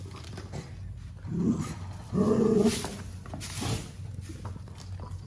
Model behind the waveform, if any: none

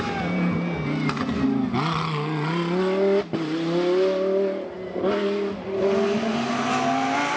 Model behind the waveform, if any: none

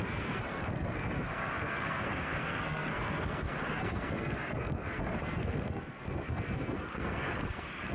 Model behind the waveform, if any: codec, SNAC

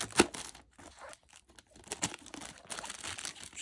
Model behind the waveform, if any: none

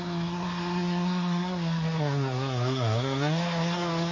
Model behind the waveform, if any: codec, SNAC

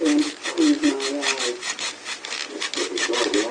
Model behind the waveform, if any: none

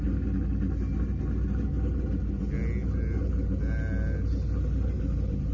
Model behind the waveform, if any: none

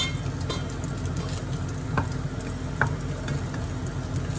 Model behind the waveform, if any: none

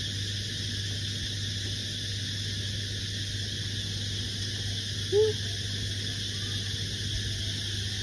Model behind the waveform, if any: none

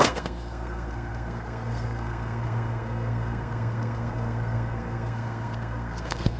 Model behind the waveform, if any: codec, SNAC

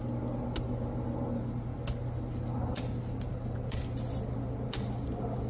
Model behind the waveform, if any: none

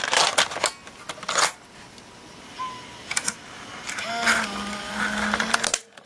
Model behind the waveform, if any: none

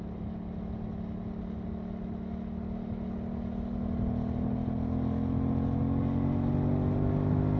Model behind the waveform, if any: none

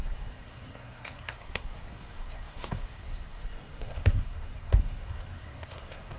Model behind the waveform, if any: codec, SNAC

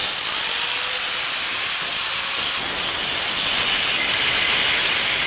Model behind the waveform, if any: none